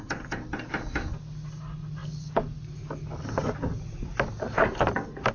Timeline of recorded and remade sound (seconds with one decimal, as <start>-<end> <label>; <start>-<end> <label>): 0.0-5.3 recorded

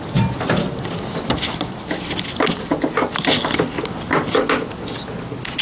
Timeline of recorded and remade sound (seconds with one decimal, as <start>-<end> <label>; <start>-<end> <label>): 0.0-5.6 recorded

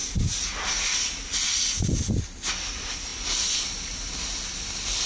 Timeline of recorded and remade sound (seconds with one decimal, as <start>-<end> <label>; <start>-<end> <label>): 0.0-5.1 recorded

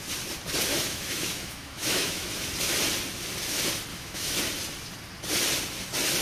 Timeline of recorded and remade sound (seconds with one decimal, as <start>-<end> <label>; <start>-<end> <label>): 0.0-0.7 recorded; 0.7-2.3 remade; 2.3-3.9 recorded; 3.9-4.4 remade; 4.4-6.2 recorded